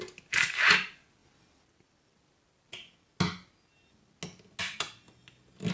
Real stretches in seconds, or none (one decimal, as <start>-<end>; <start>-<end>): 0.0-5.7

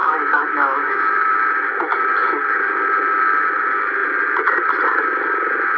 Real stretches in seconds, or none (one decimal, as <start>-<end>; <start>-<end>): 1.3-5.8

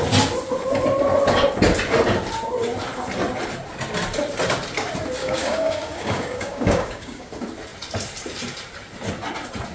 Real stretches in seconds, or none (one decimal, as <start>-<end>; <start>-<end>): 0.0-5.2; 7.3-9.7

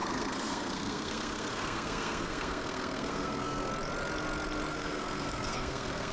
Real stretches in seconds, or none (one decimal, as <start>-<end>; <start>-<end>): 3.7-4.7